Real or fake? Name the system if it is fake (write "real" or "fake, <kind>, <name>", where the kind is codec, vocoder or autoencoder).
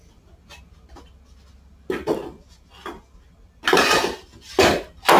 real